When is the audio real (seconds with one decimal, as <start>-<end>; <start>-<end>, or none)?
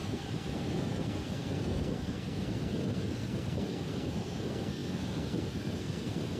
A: none